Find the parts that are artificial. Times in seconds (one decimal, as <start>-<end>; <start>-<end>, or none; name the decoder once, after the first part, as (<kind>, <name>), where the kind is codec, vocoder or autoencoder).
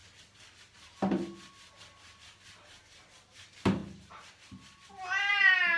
3.8-4.9 (vocoder, BigVGAN v2)